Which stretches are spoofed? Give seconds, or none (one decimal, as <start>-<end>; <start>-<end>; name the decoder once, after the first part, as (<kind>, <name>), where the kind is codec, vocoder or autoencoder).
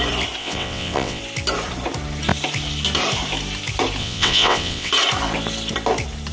0.4-1.2 (vocoder, WaveNeXt); 4.0-4.9